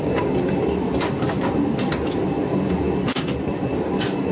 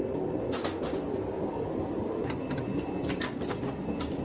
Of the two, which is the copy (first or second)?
first